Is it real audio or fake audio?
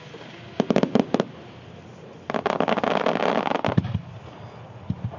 real